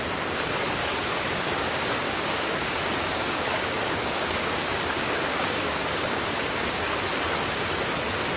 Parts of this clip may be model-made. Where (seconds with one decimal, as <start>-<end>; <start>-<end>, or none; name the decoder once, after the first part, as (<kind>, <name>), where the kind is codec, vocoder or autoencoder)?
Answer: 0.8-4.6 (codec, DAC); 5.0-6.7